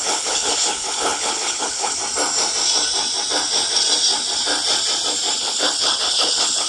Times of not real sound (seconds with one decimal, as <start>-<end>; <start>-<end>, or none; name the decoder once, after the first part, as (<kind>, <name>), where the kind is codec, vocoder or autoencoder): 0.0-2.0 (codec, HILCodec); 5.4-6.7